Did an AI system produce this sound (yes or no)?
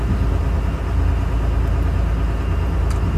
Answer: no